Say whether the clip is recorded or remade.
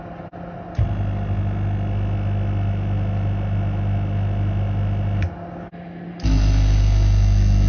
recorded